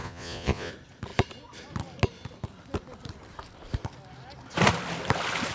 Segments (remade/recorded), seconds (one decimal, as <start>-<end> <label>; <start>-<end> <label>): 0.0-0.7 remade; 0.7-5.5 recorded